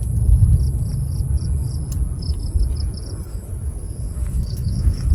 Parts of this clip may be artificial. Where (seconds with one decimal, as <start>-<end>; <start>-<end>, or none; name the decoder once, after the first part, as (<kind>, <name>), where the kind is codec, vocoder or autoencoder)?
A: 3.3-5.1 (autoencoder, DAC-VAE)

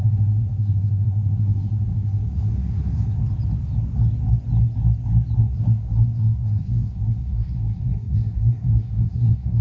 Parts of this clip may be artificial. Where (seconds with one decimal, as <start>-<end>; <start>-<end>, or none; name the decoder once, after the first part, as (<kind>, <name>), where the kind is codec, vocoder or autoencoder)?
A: 0.0-3.2 (codec, SNAC); 5.4-9.6

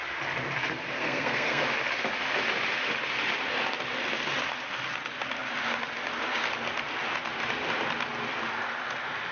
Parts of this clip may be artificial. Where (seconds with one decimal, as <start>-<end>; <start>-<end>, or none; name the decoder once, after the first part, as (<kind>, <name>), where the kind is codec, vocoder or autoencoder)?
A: 1.0-1.6 (codec, SNAC)

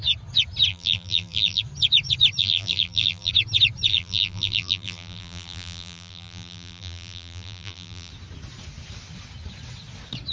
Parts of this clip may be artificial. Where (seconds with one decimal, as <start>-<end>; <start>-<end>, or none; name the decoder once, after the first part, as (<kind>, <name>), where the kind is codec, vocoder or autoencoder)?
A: 0.7-1.6 (vocoder, BigVGAN v2); 2.4-3.3; 3.9-8.1

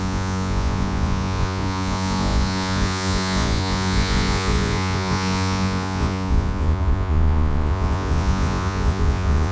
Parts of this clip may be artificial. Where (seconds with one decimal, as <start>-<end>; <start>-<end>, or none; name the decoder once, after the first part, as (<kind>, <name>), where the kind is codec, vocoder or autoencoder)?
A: 0.0-9.5 (vocoder, Vocos)